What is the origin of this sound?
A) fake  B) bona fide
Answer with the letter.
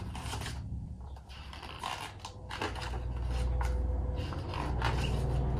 B